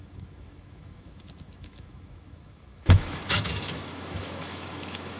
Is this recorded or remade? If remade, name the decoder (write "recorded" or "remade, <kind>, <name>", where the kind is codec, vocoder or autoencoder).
remade, autoencoder, DAC-VAE